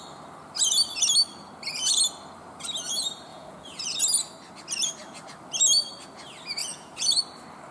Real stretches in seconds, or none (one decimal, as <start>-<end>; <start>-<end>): 0.0-3.3; 4.0-6.6; 7.2-7.7